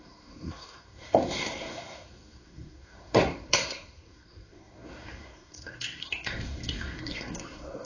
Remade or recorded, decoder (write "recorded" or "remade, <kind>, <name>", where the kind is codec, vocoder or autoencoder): remade, codec, SNAC